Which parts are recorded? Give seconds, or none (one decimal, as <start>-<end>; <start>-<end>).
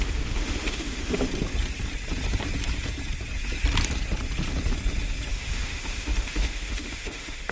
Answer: 1.3-5.3